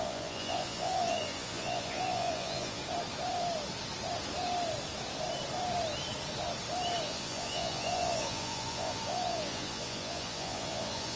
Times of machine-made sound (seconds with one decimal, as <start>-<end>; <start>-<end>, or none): 0.0-2.8; 7.0-11.2